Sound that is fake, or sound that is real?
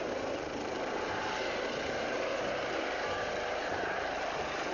fake